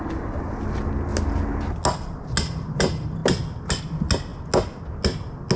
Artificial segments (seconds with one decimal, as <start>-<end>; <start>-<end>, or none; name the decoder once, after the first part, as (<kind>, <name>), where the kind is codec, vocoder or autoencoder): none